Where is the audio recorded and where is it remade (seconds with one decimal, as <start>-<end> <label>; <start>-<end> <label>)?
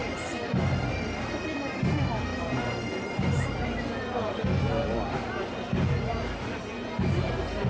0.0-7.7 recorded